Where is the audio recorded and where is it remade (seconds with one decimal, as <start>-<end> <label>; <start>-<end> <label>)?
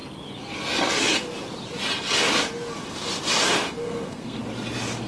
0.0-3.8 recorded; 3.8-4.4 remade; 4.4-5.1 recorded